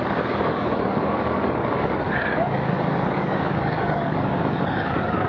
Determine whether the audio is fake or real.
fake